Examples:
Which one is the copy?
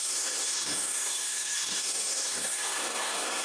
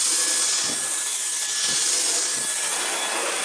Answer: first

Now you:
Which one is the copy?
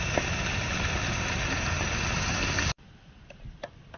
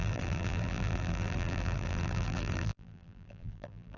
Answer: second